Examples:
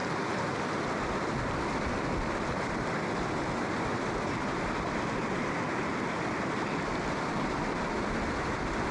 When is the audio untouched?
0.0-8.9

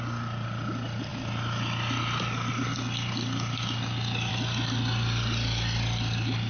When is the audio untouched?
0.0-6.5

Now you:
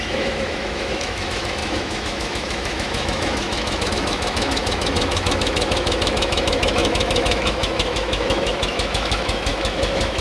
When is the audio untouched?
none